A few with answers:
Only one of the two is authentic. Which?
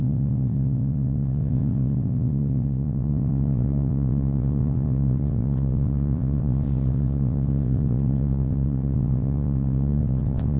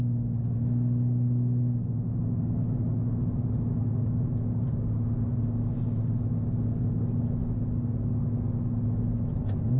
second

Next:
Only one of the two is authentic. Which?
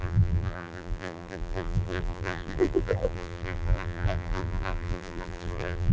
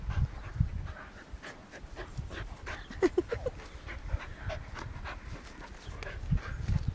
second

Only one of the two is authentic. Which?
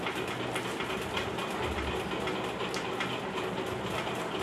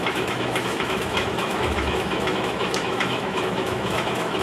first